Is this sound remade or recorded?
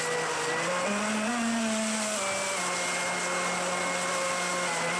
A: recorded